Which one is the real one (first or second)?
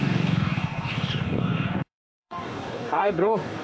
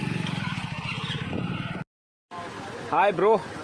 second